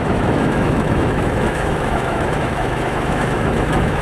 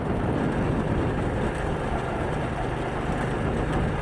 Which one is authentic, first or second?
second